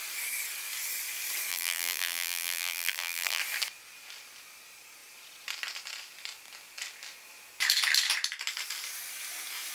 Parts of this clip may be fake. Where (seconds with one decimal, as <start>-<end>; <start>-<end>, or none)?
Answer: 1.5-3.4